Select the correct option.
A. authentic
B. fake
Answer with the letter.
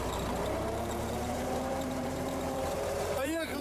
B